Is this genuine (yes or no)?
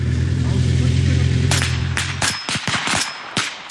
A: no